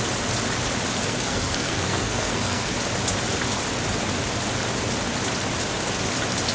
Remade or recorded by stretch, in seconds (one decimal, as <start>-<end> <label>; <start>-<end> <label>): 0.0-1.0 recorded; 1.0-2.7 remade; 2.7-6.5 recorded